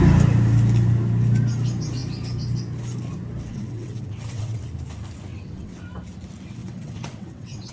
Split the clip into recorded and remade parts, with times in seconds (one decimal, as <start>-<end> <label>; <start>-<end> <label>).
0.0-3.5 recorded; 3.5-4.6 remade; 4.6-5.3 recorded; 5.3-5.8 remade; 5.8-6.6 recorded; 6.6-7.7 remade